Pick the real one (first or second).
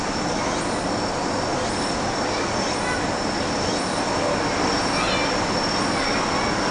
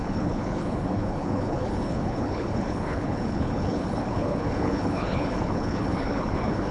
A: first